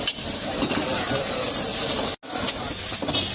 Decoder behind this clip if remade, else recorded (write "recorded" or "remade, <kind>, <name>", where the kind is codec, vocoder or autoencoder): recorded